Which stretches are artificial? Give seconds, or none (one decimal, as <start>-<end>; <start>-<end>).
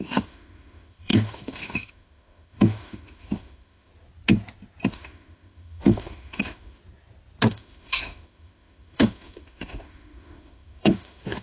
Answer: 0.0-3.9; 4.9-6.8; 7.5-11.4